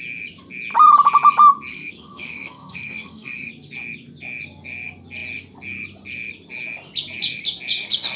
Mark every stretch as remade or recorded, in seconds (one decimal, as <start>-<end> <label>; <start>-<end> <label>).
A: 0.0-1.7 recorded; 1.7-3.5 remade; 3.5-8.2 recorded